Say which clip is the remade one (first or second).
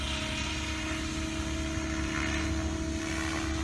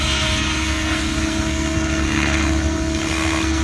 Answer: second